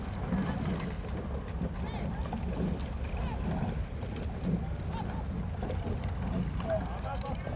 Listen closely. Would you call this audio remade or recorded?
recorded